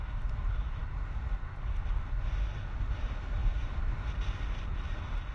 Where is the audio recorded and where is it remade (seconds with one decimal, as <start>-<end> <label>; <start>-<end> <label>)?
0.0-5.3 recorded